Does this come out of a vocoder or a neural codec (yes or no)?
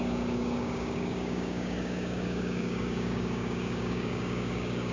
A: yes